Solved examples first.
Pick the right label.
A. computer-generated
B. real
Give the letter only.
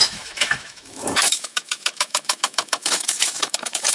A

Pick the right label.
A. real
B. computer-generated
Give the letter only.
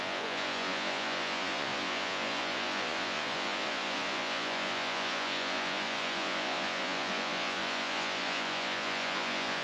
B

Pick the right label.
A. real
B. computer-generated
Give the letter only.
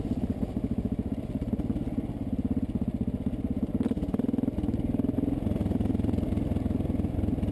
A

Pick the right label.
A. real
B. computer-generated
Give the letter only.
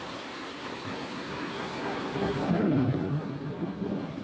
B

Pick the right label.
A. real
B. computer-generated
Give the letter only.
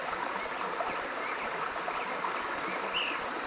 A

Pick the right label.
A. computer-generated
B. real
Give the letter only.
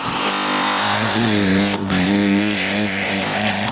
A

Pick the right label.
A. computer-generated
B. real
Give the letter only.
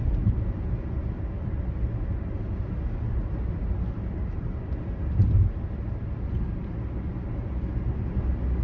B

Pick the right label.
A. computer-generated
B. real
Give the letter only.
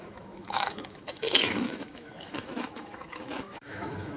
A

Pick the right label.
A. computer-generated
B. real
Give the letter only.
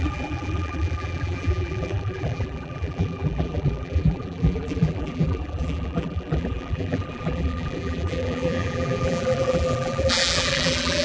A